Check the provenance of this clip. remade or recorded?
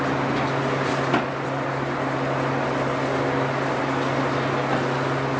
recorded